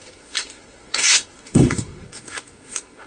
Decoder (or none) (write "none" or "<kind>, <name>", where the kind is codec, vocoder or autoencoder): codec, SNAC